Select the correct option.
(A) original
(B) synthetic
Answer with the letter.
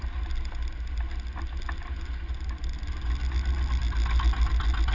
A